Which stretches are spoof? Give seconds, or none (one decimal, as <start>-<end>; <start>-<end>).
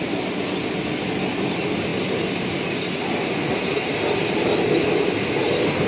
none